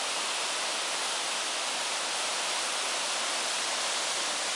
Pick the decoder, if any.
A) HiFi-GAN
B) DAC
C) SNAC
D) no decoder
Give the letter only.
D